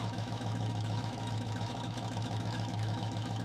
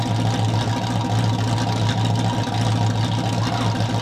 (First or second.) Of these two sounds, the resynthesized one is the first